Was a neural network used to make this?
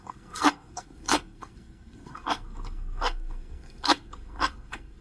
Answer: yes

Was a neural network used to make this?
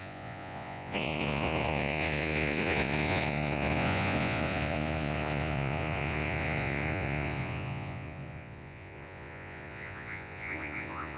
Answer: yes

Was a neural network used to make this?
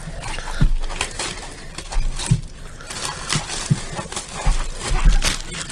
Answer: no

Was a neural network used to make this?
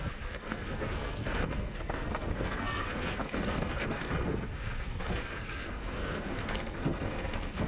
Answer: yes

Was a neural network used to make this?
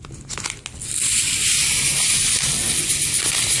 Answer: no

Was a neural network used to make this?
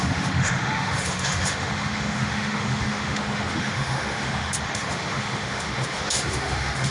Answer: yes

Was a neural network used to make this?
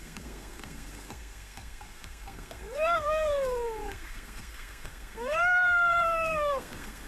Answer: yes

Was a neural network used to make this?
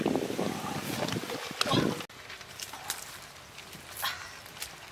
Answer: no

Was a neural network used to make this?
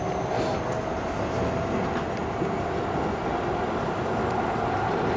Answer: no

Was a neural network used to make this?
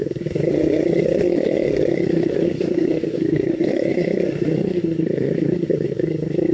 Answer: yes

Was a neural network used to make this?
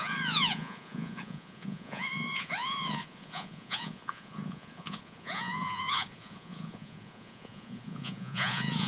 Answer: yes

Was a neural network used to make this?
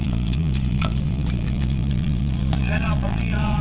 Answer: yes